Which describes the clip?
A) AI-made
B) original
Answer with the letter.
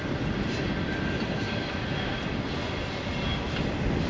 B